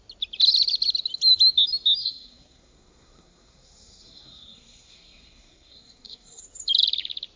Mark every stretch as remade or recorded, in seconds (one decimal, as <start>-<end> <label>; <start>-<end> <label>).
0.0-2.0 recorded; 2.0-6.4 remade; 6.4-7.4 recorded